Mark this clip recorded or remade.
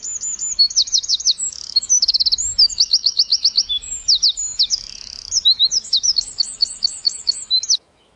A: remade